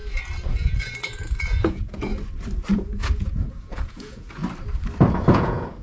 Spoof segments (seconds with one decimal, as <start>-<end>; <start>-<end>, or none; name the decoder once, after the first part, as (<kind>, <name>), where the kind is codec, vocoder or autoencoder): 0.5-2.1 (vocoder, Vocos); 2.7-4.4; 5.1-5.8